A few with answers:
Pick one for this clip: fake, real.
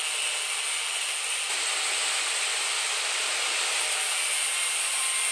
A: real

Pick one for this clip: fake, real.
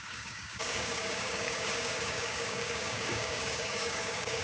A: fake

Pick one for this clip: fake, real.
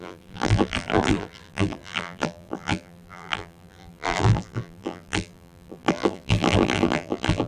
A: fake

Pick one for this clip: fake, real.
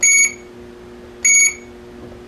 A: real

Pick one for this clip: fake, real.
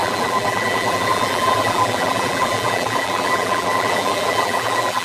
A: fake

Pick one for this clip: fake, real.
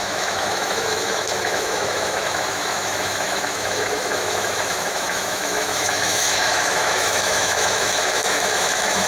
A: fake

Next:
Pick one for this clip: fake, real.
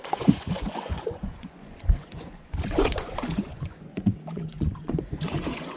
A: fake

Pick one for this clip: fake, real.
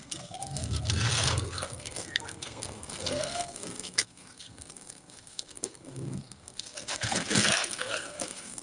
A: fake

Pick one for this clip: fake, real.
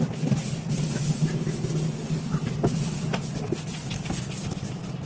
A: real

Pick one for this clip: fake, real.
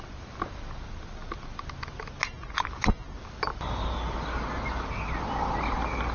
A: real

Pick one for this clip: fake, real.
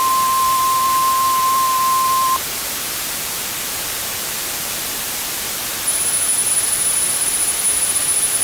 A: fake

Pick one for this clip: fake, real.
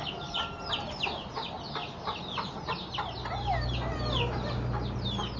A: real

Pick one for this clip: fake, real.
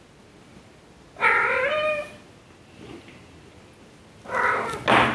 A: real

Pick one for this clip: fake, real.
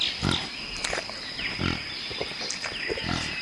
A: real